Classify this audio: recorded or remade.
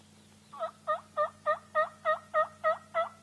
recorded